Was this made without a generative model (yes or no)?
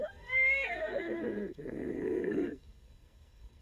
no